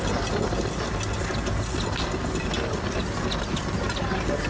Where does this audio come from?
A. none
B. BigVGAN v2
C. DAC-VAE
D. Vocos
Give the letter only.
A